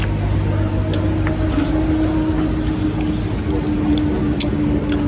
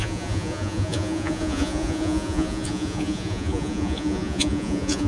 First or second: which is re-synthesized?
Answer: second